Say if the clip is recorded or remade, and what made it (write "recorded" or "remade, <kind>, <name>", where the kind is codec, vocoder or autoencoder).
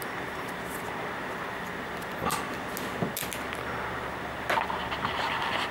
recorded